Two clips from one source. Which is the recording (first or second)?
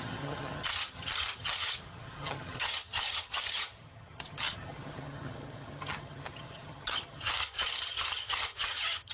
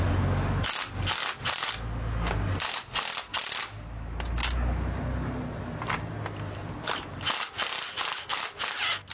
second